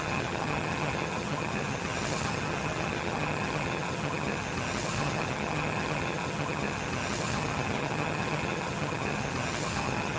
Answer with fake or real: fake